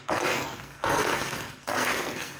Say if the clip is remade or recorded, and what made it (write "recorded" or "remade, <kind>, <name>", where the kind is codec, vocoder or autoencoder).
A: remade, codec, SNAC